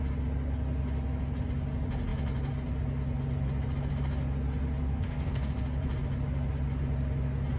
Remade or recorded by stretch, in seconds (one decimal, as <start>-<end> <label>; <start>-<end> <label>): 0.0-4.9 recorded; 4.9-5.5 remade; 5.5-7.6 recorded